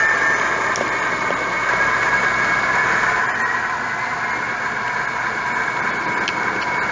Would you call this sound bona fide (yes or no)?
yes